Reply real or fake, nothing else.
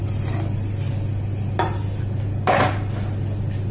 real